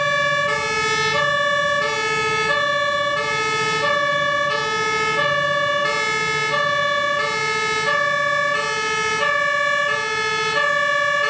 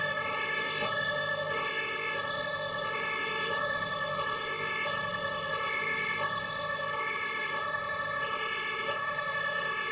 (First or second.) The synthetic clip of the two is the second